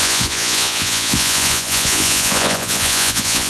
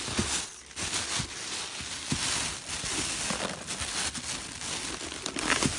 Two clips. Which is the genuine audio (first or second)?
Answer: second